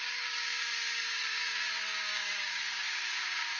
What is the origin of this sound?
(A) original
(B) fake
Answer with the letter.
B